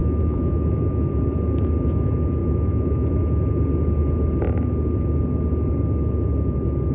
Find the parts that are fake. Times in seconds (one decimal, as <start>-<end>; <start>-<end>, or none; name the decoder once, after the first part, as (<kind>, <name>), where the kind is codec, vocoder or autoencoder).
0.0-1.1 (autoencoder, DAC-VAE); 2.4-3.1